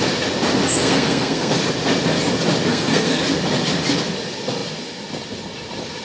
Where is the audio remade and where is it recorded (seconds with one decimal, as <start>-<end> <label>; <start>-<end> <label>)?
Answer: 0.0-0.7 recorded; 0.7-1.6 remade; 1.6-2.7 recorded; 2.7-3.2 remade; 3.2-6.0 recorded